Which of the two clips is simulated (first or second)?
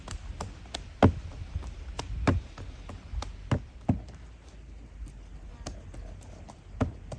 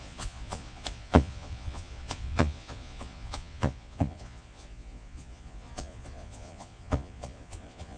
second